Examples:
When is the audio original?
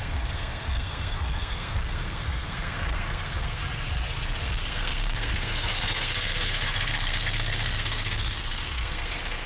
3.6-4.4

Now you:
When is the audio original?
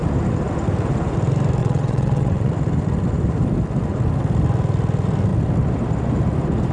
0.0-1.6; 2.5-6.7